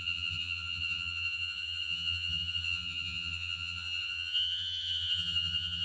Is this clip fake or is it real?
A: fake